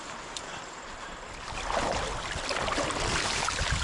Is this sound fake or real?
real